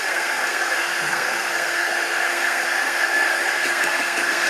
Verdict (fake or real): fake